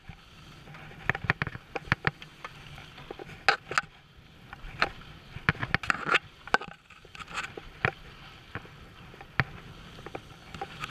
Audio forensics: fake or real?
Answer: real